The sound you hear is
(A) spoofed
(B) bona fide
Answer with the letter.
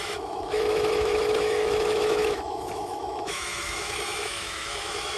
A